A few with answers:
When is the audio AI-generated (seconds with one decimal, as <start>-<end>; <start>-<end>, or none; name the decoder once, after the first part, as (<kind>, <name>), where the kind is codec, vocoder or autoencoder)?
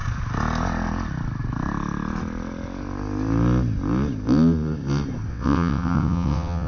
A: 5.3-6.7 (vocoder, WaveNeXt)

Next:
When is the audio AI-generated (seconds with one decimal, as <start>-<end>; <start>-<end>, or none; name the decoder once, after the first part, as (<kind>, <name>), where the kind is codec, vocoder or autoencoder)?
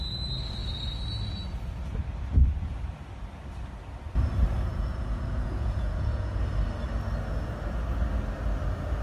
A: 4.7-6.4 (vocoder, Vocos)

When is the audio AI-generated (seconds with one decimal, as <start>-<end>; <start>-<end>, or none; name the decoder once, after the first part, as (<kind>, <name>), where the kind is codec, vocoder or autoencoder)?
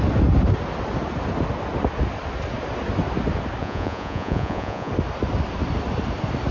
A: 3.6-4.9 (vocoder, Vocos)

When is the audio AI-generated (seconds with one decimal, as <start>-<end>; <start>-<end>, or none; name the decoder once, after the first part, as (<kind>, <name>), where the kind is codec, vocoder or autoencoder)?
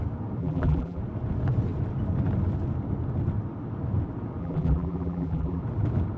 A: 0.4-1.0 (vocoder, BigVGAN v2); 4.4-5.6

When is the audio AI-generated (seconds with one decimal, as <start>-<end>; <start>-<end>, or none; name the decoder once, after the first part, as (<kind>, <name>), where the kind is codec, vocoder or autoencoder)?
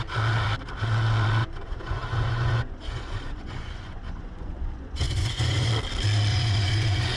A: 1.4-5.7 (vocoder, Vocos); 6.3-7.2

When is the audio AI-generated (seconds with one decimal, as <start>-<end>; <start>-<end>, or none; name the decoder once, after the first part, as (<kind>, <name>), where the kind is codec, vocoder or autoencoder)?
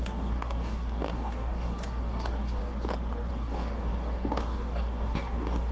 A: 0.0-2.6 (codec, DAC); 3.3-5.7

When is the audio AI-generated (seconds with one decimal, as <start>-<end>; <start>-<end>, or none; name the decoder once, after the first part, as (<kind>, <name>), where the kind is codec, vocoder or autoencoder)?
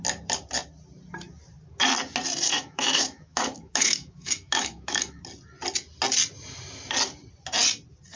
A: 2.5-5.2 (autoencoder, DAC-VAE)